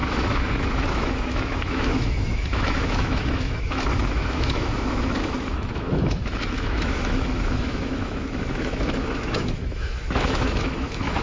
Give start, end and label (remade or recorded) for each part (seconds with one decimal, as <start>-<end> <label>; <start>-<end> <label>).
0.0-11.2 remade